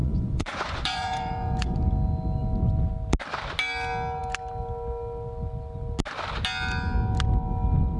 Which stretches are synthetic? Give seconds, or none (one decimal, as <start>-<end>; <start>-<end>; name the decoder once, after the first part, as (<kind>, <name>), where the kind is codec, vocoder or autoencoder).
0.0-1.8 (vocoder, Vocos)